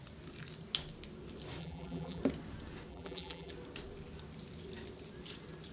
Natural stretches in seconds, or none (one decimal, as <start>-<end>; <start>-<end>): 0.0-1.6; 2.2-2.9; 3.5-5.7